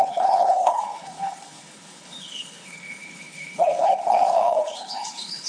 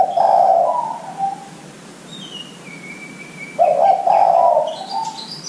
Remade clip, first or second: first